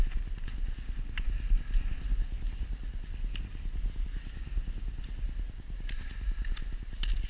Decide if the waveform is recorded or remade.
recorded